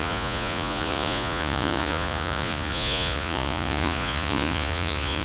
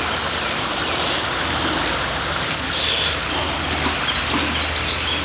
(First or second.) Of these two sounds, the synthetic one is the first